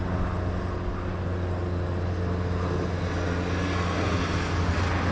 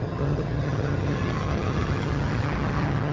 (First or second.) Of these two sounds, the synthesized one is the second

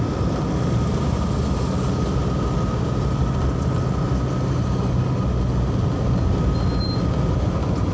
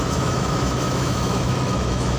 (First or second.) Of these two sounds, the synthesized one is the second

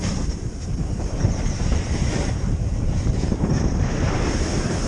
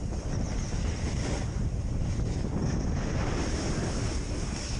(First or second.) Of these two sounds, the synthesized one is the first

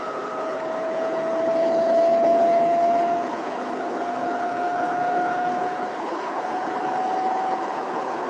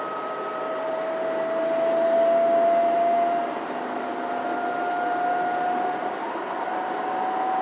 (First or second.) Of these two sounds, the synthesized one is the first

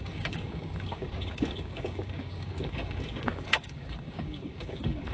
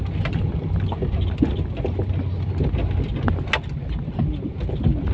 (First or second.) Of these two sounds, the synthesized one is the first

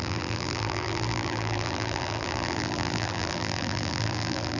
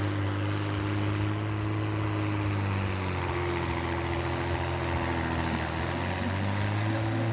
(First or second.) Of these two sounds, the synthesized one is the first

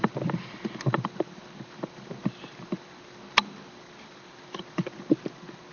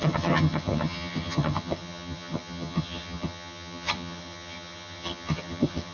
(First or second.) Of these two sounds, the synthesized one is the second